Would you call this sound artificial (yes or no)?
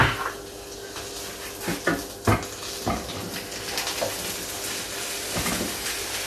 no